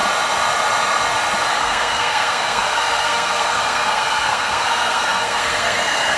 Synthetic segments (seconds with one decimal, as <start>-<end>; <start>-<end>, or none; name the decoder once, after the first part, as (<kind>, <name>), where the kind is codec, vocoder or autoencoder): 1.6-6.2 (codec, SNAC)

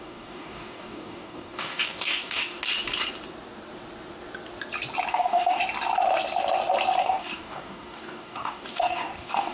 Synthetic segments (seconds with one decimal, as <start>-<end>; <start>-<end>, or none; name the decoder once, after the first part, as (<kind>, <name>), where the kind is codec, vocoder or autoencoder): 0.0-2.6 (codec, DAC); 5.1-5.6; 7.0-9.5

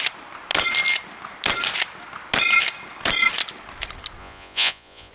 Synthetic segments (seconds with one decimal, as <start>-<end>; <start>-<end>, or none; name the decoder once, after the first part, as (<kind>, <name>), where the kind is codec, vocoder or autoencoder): 4.2-5.1 (vocoder, Vocos)

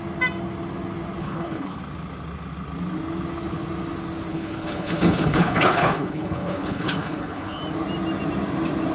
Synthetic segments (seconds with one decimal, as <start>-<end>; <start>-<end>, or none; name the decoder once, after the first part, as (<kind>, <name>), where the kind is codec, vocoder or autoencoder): 1.2-1.8 (codec, HILCodec); 4.3-7.6

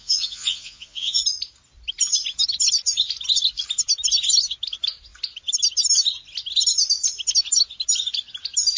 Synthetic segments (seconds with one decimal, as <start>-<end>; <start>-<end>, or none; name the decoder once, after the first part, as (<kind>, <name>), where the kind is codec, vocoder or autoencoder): 0.0-1.2 (vocoder, Vocos)